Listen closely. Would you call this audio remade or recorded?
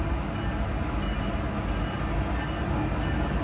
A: recorded